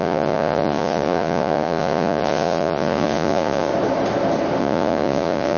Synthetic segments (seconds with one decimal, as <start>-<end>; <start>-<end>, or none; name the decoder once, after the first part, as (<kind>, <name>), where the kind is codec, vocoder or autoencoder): 0.0-3.7 (vocoder, Vocos); 4.6-5.6